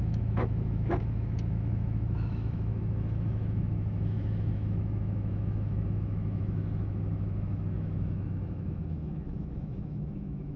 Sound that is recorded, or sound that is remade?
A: remade